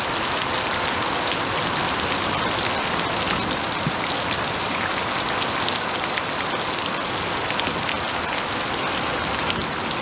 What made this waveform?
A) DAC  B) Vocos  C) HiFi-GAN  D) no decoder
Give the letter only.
D